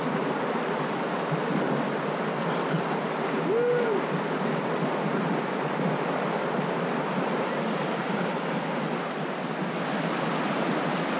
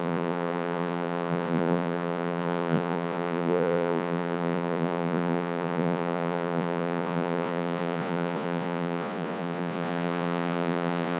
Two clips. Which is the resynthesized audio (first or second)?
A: second